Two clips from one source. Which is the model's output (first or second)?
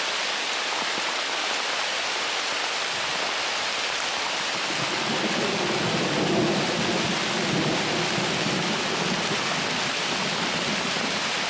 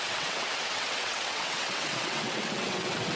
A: second